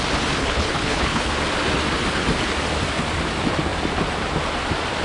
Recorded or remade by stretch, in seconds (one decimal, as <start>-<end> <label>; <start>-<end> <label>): 0.0-0.4 recorded; 0.4-1.3 remade; 1.3-5.0 recorded